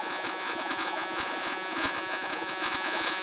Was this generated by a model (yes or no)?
yes